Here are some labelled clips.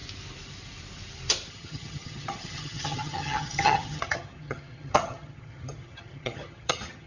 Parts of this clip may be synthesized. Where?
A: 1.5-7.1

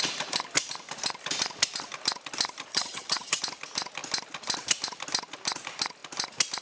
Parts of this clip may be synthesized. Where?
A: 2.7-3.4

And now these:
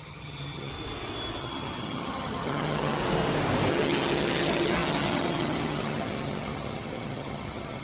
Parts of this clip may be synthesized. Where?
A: 0.0-0.7; 1.4-3.0; 3.7-7.8

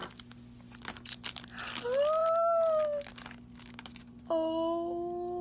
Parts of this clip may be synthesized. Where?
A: none

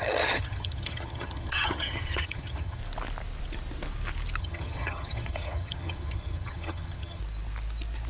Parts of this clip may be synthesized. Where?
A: 0.0-2.8; 4.4-7.2

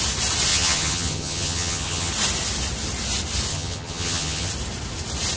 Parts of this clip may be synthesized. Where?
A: 0.5-2.1; 3.5-4.5

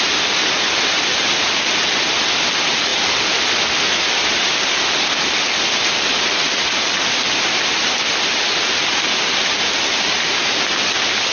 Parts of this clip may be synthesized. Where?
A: none